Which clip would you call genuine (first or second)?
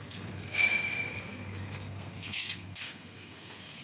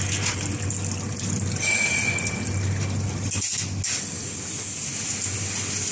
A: second